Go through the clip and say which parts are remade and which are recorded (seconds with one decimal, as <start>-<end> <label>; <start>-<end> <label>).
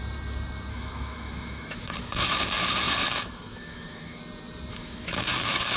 0.0-0.7 recorded; 0.7-4.2 remade; 4.2-4.7 recorded; 4.7-5.8 remade